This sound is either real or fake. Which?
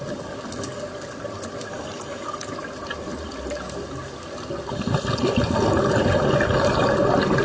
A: real